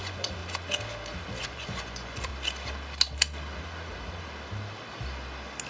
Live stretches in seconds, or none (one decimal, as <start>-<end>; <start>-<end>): 0.4-1.4; 2.3-5.7